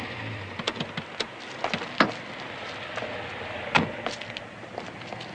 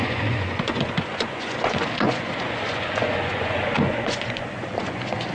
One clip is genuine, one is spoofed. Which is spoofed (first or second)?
second